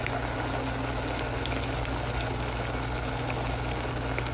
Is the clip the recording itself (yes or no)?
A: yes